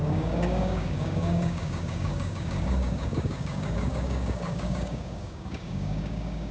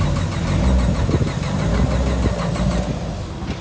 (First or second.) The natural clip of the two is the second